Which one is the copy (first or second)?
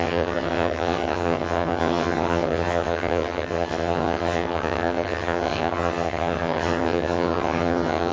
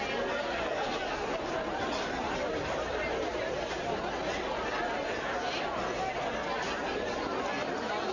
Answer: first